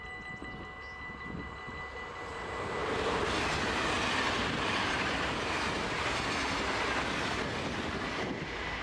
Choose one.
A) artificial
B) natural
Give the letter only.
B